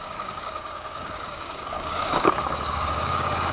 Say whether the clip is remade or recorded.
remade